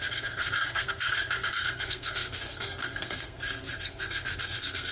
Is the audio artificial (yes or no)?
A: yes